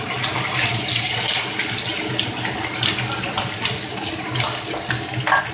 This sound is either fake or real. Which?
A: real